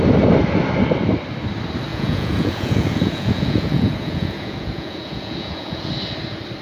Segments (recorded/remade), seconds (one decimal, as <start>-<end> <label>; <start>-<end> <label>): 0.0-1.9 recorded; 1.9-5.9 remade; 5.9-6.6 recorded